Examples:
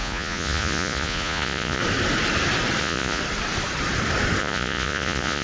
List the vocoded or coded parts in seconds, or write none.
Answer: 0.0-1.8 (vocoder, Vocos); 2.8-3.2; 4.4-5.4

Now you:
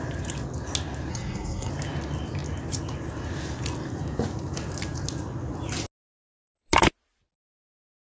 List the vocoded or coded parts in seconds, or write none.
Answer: 1.1-1.7 (codec, SNAC)

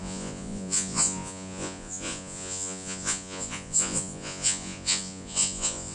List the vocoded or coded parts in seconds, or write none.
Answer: 0.0-5.9 (vocoder, Vocos)